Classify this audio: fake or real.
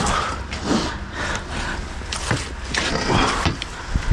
real